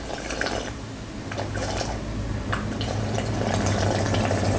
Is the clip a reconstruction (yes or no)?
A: no